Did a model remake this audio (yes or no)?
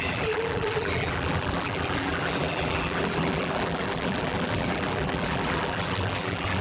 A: yes